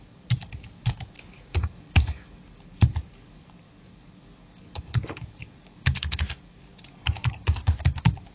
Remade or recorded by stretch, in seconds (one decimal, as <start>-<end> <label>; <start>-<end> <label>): 0.0-8.3 remade